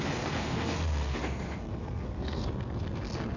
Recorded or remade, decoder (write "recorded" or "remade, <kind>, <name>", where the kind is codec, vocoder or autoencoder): remade, codec, SNAC